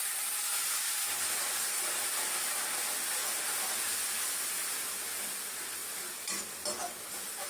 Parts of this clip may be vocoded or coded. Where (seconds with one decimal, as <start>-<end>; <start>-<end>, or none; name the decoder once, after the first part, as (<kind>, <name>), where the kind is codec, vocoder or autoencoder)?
none